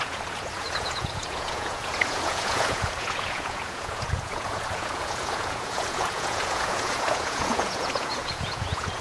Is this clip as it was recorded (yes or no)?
no